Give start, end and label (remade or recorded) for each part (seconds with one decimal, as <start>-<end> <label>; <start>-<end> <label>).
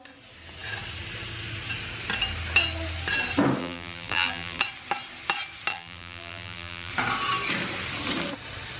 0.0-3.6 recorded; 3.6-4.6 remade; 4.6-5.7 recorded; 5.7-6.9 remade; 6.9-8.8 recorded